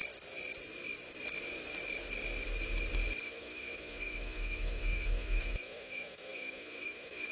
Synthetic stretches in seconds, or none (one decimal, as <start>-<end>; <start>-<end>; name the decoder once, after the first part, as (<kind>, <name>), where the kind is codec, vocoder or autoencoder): 3.2-7.3 (autoencoder, DAC-VAE)